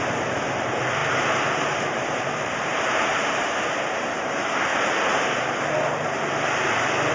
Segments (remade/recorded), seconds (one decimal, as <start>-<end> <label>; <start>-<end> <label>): 0.0-1.0 recorded; 1.0-4.2 remade; 4.2-4.7 recorded; 4.7-7.1 remade